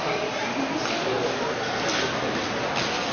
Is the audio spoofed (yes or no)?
no